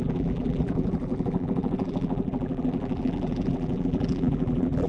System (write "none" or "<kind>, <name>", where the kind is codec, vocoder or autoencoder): vocoder, BigVGAN v2